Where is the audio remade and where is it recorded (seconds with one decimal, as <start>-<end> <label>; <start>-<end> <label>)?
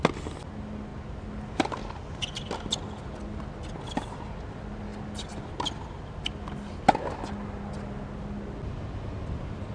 0.0-9.7 recorded